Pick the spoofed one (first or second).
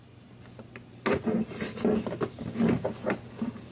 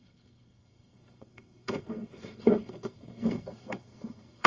second